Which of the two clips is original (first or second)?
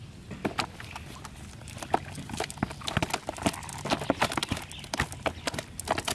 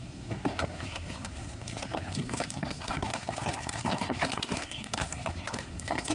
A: first